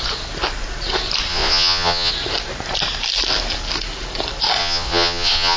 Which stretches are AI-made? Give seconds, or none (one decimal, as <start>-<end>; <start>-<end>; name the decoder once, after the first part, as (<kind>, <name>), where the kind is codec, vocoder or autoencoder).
1.3-2.1 (vocoder, Vocos); 4.6-5.6